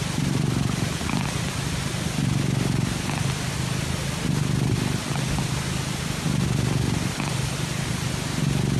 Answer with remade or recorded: recorded